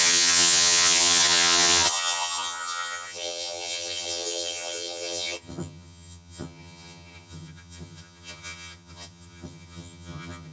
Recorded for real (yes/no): no